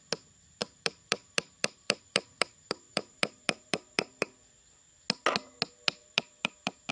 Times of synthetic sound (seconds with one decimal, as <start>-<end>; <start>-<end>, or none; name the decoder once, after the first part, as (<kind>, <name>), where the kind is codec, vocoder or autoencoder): 0.6-4.7 (vocoder, BigVGAN v2); 6.0-6.9